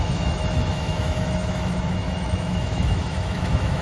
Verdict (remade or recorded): remade